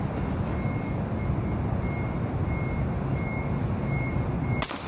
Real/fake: real